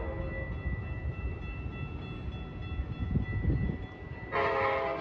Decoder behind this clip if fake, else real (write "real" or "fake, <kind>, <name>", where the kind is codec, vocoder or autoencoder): real